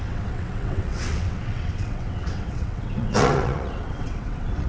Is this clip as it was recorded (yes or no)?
no